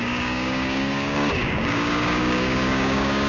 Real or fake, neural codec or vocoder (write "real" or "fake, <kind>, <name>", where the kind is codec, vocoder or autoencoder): fake, codec, DAC